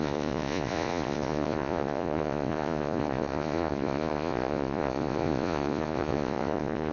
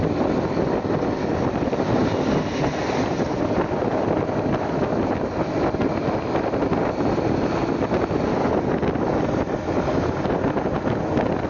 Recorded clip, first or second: second